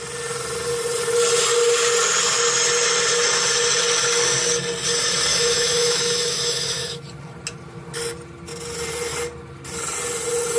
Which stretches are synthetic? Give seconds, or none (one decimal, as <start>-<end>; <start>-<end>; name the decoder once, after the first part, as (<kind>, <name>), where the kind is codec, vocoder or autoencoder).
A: 5.3-7.0 (autoencoder, DAC-VAE)